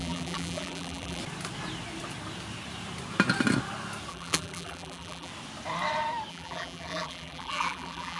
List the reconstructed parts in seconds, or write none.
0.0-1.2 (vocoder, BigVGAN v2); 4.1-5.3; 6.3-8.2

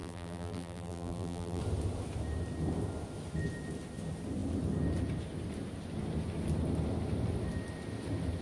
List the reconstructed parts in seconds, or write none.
0.0-1.6 (vocoder, BigVGAN v2)

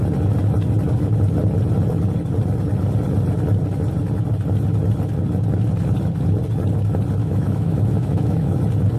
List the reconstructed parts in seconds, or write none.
7.2-8.6 (autoencoder, DAC-VAE)

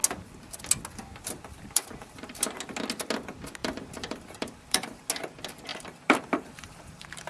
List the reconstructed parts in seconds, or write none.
1.1-2.6 (vocoder, BigVGAN v2); 3.6-5.1; 5.7-7.3

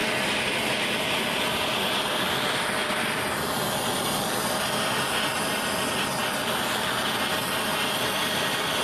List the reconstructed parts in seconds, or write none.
none

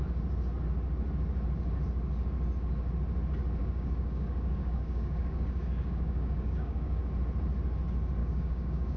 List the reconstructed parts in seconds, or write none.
3.6-7.0 (codec, DAC); 8.2-9.0

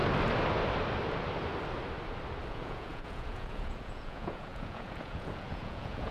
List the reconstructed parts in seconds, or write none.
2.5-6.1 (vocoder, Vocos)

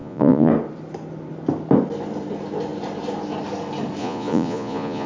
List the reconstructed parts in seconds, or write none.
0.0-0.5 (vocoder, Vocos); 4.0-5.1